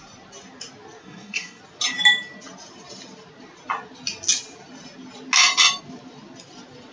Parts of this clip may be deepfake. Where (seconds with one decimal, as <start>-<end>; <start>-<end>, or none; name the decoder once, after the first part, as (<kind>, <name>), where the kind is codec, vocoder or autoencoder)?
1.0-1.6 (codec, SNAC)